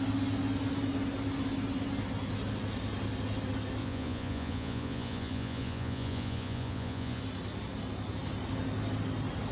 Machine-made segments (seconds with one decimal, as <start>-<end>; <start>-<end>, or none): 3.8-7.2